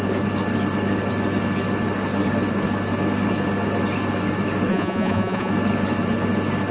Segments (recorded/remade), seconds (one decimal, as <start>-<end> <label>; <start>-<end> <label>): 0.0-4.7 recorded; 4.7-5.5 remade; 5.5-6.7 recorded